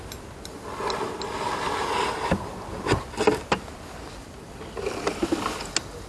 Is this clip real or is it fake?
real